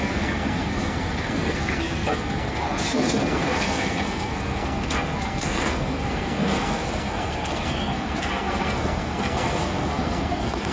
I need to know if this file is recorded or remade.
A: remade